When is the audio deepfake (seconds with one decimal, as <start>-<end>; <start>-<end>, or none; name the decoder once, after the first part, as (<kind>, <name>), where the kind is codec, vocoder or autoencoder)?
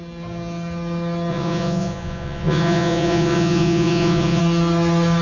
1.3-4.4 (vocoder, Vocos)